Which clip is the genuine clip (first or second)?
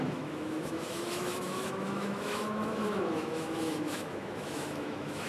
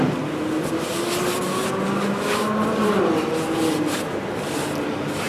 second